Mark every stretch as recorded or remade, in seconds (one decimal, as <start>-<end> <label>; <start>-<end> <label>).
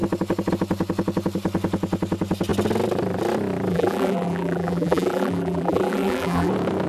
0.0-3.7 recorded; 3.7-6.5 remade; 6.5-6.9 recorded